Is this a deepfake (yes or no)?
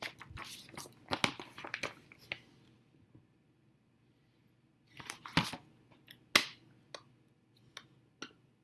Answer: no